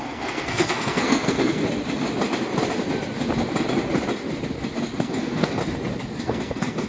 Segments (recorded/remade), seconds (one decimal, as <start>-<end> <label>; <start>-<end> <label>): 0.0-1.6 remade; 1.6-5.0 recorded; 5.0-5.6 remade; 5.6-6.2 recorded; 6.2-6.9 remade